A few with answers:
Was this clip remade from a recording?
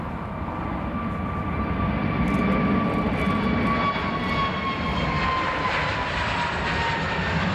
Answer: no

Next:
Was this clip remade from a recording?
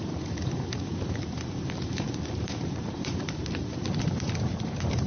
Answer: yes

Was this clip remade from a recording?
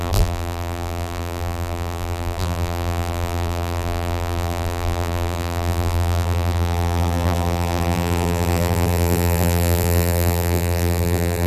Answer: yes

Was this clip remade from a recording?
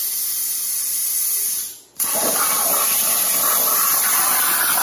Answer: yes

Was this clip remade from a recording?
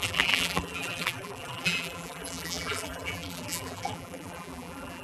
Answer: yes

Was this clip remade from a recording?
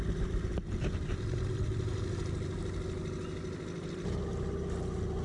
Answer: no